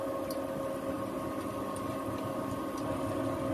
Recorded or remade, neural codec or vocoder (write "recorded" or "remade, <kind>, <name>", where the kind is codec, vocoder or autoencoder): recorded